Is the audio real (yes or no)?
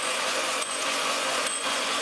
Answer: no